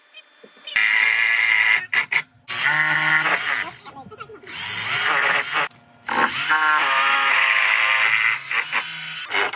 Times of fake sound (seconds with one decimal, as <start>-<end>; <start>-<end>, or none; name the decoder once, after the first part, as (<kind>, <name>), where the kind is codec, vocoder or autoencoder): 6.8-7.8 (autoencoder, DAC-VAE)